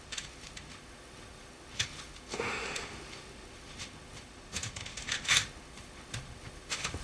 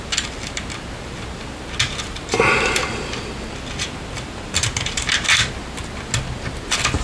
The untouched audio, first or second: second